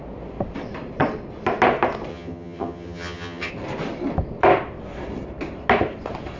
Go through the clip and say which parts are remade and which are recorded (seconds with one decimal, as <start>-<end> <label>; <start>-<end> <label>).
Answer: 0.0-2.1 recorded; 2.1-3.5 remade; 3.5-6.4 recorded